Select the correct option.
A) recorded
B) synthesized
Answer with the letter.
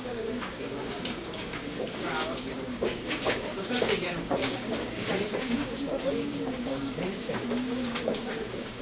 B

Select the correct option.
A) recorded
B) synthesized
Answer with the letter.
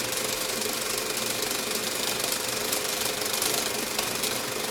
A